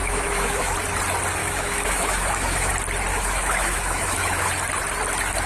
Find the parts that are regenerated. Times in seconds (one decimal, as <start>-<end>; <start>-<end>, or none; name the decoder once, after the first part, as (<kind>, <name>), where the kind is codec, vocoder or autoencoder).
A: 0.0-0.7 (autoencoder, DAC-VAE); 1.4-2.7; 3.1-4.5